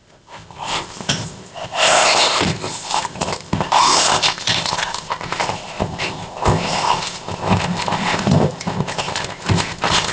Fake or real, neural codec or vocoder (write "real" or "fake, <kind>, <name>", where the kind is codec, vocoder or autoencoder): fake, codec, ZipCodec